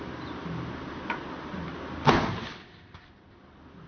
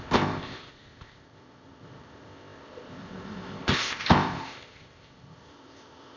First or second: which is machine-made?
second